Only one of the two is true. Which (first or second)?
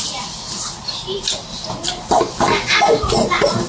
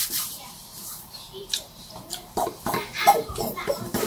first